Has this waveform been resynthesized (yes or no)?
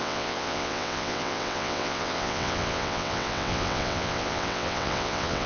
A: yes